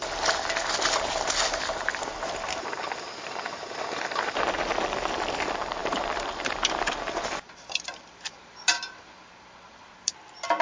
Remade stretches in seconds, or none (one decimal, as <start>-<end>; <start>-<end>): 0.0-10.6